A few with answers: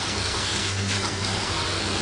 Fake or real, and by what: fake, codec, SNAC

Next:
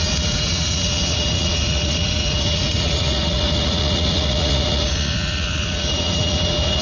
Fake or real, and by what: fake, vocoder, Vocos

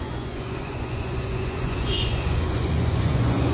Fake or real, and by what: fake, vocoder, Vocos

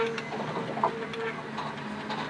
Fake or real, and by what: real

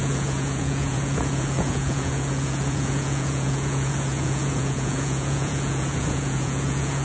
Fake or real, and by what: fake, vocoder, Vocos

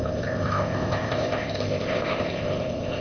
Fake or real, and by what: fake, codec, ZipCodec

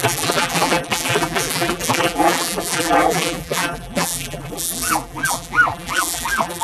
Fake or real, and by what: fake, vocoder, BigVGAN v2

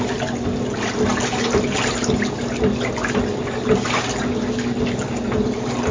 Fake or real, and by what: real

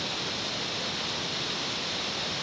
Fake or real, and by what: real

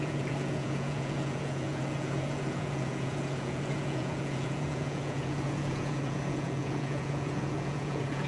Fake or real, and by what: fake, vocoder, Vocos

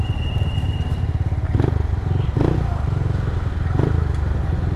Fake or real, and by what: real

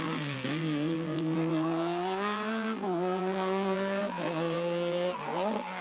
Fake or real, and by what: fake, vocoder, BigVGAN v2